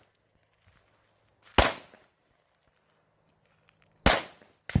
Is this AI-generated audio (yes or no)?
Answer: no